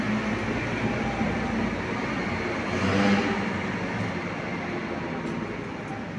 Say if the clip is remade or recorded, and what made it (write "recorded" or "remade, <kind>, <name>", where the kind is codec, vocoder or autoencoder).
recorded